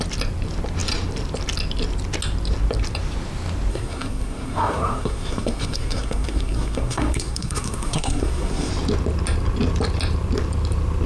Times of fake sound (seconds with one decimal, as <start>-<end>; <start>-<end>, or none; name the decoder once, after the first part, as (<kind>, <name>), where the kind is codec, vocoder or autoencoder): 3.7-8.7 (codec, SNAC)